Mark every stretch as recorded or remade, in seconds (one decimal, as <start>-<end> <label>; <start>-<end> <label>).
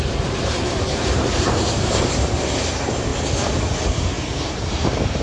0.0-3.1 remade; 3.1-3.8 recorded; 3.8-5.2 remade